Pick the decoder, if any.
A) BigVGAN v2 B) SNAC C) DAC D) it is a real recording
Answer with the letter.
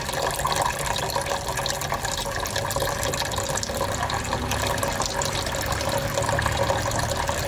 D